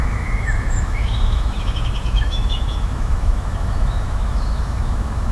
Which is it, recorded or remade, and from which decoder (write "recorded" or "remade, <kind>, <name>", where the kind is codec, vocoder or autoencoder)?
remade, autoencoder, DAC-VAE